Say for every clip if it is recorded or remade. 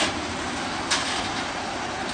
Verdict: recorded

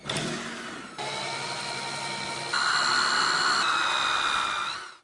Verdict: recorded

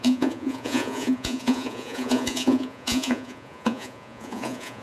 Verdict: remade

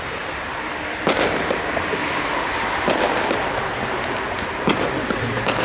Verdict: recorded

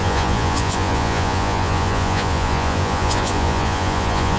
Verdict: remade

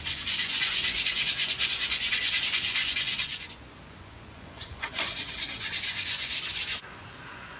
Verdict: remade